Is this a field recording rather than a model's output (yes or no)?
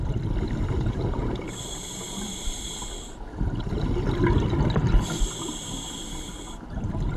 yes